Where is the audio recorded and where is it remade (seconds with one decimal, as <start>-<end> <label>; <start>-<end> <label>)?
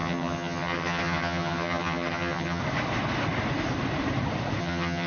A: 0.0-2.6 remade; 2.6-4.6 recorded; 4.6-5.1 remade